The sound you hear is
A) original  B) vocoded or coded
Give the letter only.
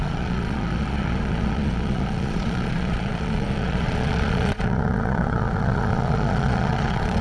B